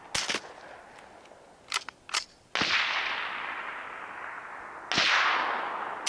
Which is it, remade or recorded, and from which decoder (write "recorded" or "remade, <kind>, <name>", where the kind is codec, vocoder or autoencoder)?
recorded